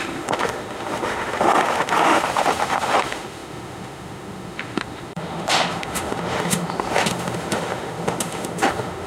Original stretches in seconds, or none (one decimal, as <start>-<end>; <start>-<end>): none